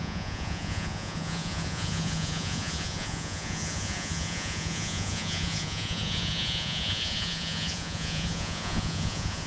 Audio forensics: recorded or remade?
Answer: remade